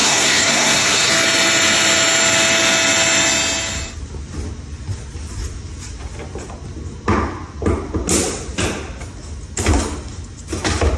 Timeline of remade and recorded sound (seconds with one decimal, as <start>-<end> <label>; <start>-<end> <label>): 0.0-1.1 remade; 1.1-11.0 recorded